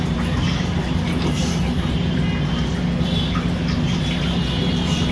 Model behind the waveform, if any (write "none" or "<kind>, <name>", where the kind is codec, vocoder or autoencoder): none